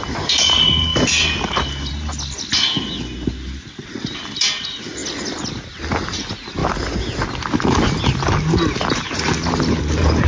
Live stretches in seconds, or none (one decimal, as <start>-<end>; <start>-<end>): 0.0-10.3